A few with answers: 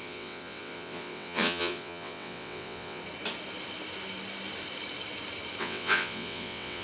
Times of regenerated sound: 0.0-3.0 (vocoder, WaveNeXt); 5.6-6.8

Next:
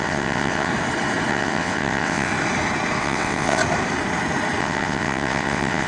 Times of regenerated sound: 0.0-0.7 (vocoder, WaveNeXt); 1.3-2.3; 3.0-3.6; 4.6-5.9

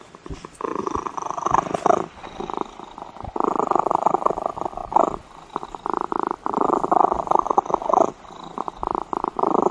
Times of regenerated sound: none

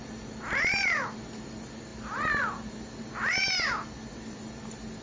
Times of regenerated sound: none